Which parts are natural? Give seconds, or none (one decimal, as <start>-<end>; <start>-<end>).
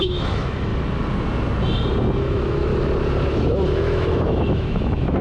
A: 0.7-2.2; 2.7-3.8